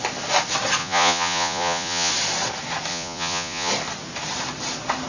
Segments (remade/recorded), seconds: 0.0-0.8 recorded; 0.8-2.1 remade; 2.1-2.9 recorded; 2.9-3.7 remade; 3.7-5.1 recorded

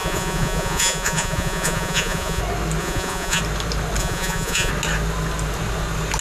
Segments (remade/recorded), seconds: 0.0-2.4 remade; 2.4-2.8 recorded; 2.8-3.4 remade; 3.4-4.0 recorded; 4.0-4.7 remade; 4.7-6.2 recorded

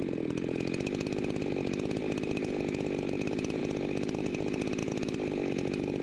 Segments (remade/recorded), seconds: 0.0-6.0 recorded

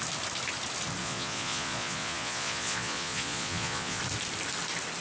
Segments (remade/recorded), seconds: 0.0-1.0 recorded; 1.0-4.0 remade; 4.0-5.0 recorded